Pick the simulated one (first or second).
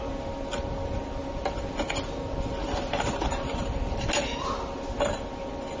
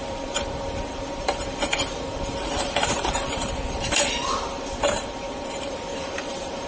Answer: second